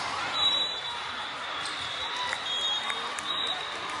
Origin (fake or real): fake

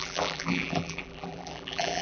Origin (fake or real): fake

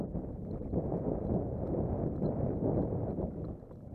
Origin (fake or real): real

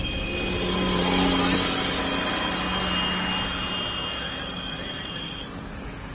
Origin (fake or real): real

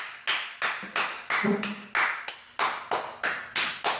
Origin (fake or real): real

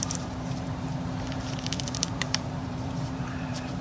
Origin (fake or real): fake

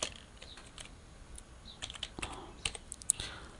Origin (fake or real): real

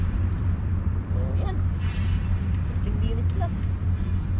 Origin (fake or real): fake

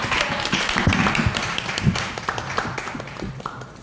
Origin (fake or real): fake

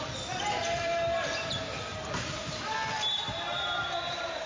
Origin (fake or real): fake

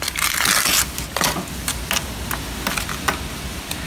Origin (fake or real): real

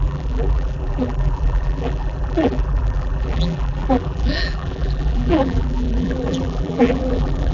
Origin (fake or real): fake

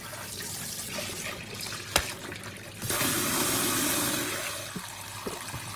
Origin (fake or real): real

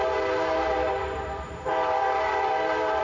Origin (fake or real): fake